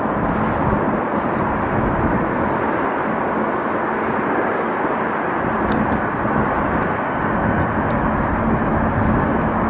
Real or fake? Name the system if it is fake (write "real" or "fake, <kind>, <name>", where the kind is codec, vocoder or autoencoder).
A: real